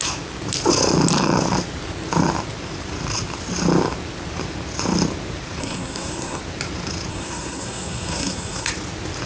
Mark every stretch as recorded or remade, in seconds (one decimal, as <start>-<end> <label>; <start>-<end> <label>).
0.0-5.6 recorded; 5.6-6.4 remade; 6.4-7.1 recorded; 7.1-8.7 remade; 8.7-9.3 recorded